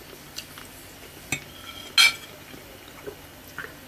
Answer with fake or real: real